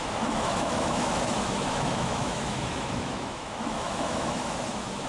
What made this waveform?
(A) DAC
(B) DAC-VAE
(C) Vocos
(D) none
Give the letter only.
B